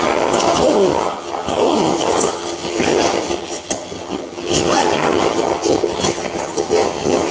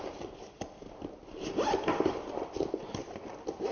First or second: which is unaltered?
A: second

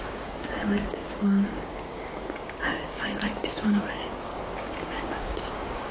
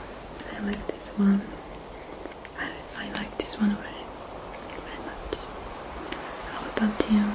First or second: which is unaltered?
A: second